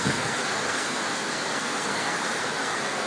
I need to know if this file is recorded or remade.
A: remade